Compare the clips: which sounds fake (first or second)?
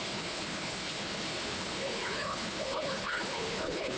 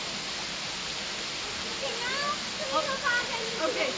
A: first